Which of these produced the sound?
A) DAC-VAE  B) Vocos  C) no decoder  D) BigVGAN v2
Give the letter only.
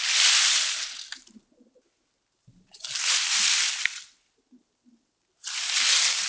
C